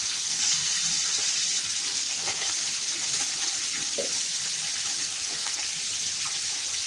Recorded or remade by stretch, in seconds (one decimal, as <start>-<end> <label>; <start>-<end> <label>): 0.0-0.8 remade; 0.8-1.9 recorded; 1.9-2.5 remade; 2.5-5.0 recorded; 5.0-5.7 remade; 5.7-6.9 recorded